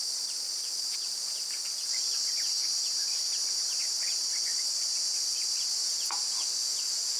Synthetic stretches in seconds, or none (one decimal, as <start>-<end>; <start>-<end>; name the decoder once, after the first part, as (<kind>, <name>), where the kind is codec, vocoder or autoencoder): 0.9-2.0 (vocoder, Vocos); 5.8-7.2